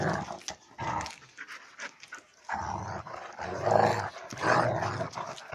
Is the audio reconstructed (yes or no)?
no